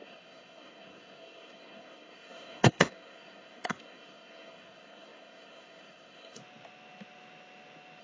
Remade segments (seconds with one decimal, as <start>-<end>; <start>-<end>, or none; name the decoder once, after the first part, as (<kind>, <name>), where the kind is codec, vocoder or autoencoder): 0.0-6.4 (codec, SNAC)